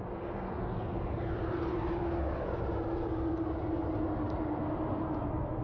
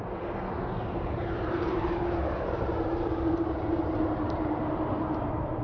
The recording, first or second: first